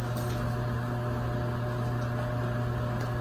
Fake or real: real